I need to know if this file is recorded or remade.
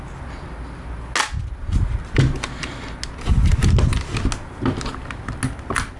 recorded